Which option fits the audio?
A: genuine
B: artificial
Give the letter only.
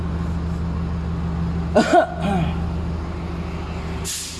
A